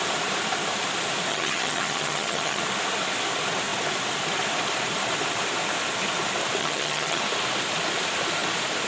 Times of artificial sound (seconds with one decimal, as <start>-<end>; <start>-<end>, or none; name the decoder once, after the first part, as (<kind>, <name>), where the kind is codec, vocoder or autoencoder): 1.3-2.6 (vocoder, HiFi-GAN); 6.6-7.2